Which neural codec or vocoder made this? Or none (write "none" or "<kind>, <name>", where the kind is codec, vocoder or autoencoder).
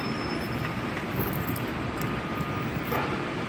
none